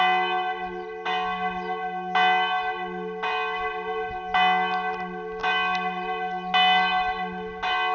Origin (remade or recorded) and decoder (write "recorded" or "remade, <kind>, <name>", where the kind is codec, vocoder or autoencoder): recorded